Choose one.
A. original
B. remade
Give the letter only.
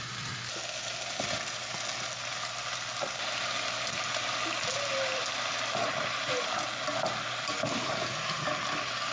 A